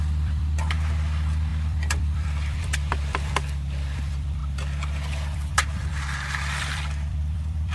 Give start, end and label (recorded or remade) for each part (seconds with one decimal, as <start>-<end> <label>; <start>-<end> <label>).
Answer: 0.0-7.7 remade